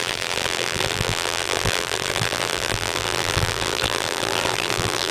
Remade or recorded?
remade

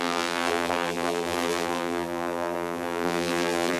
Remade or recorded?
remade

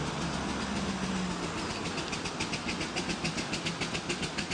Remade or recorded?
recorded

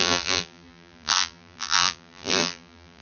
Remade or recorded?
remade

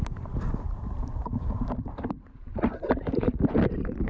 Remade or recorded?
remade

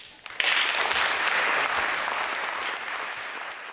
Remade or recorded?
recorded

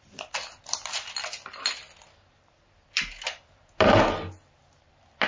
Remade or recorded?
recorded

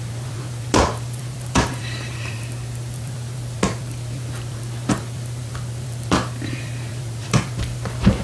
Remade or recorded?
remade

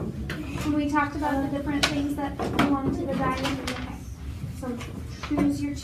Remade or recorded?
recorded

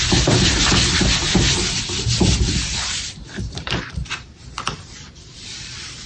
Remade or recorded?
remade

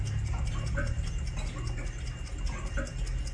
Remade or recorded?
recorded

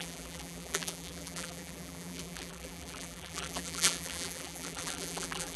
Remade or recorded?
remade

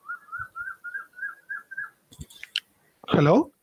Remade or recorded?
recorded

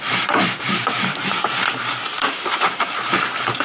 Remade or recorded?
remade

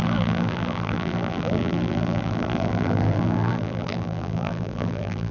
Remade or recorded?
remade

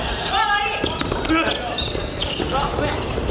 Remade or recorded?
recorded